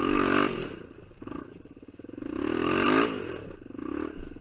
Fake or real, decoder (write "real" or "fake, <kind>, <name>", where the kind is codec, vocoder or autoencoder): real